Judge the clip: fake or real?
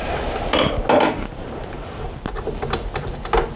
real